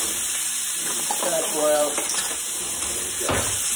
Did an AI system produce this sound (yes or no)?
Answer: yes